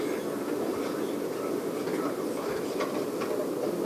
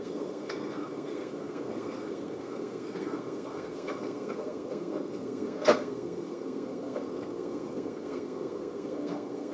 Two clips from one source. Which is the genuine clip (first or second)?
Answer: first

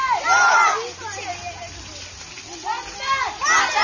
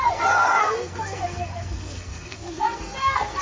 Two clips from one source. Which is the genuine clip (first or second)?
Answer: first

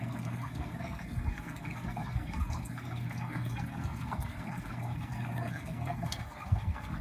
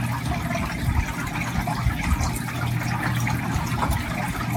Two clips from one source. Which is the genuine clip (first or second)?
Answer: second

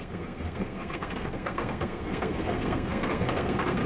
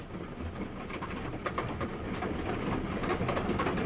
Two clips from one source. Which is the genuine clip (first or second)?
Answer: second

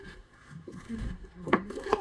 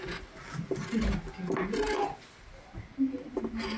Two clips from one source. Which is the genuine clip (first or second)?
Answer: second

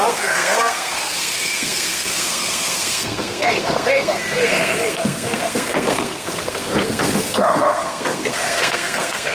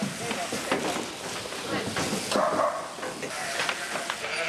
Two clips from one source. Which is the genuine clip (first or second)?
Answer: second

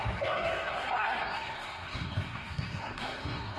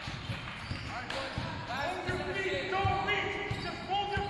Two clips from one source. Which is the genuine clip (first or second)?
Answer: second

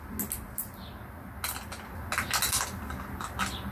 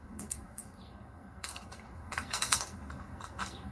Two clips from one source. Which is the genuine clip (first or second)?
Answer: first